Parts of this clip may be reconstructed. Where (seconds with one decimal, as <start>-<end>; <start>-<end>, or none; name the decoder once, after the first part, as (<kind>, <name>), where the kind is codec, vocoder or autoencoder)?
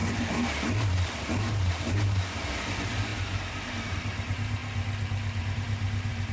0.0-4.6 (vocoder, BigVGAN v2); 5.4-6.3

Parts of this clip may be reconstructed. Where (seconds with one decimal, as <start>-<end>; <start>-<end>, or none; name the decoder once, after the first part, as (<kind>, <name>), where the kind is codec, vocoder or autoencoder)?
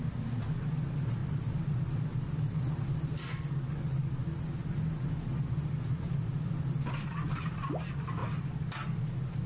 none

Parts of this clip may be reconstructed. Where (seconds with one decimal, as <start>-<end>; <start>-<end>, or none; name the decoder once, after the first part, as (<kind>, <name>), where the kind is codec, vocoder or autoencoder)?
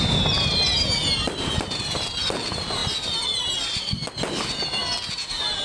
none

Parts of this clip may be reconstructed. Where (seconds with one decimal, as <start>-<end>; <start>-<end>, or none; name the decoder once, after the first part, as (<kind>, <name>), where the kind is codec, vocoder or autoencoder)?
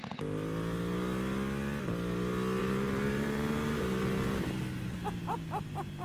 2.6-3.8 (vocoder, BigVGAN v2)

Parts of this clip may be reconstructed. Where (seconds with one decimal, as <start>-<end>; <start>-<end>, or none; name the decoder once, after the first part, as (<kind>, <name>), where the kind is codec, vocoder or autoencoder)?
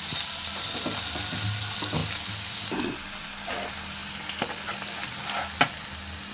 none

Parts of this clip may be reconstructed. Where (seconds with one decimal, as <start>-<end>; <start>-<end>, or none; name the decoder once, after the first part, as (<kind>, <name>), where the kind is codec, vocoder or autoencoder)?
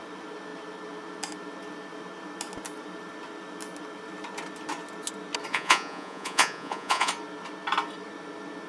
5.5-7.1 (vocoder, Vocos)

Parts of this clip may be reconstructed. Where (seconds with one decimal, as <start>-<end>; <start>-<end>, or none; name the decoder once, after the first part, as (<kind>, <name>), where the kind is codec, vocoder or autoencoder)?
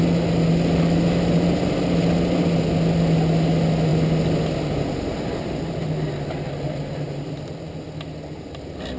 none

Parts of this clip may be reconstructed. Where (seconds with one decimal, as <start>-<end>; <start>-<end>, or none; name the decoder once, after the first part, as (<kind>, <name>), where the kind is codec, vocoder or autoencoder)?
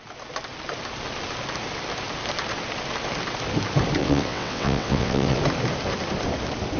4.0-5.4 (vocoder, WaveNeXt)